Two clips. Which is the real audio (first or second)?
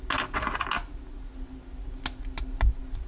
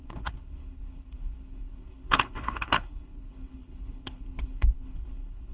first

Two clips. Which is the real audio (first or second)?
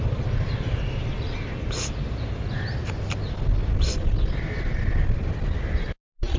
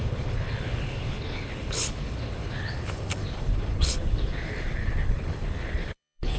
first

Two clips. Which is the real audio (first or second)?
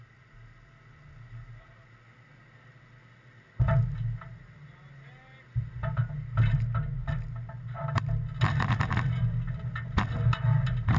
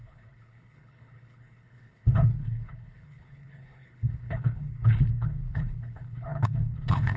first